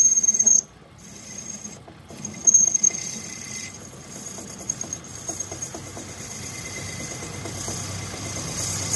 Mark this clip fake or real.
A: real